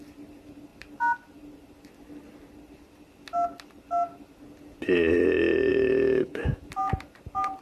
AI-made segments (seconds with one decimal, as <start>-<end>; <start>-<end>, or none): 5.7-6.6